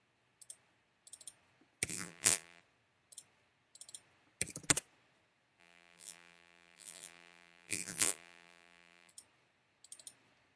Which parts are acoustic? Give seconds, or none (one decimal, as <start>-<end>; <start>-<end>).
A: 0.0-1.9; 2.6-5.6; 9.1-10.6